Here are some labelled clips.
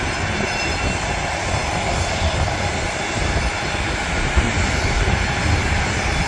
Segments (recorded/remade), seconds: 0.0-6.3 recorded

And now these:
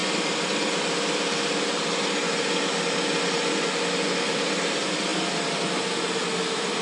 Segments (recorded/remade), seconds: 0.0-2.3 remade; 2.3-5.1 recorded; 5.1-6.8 remade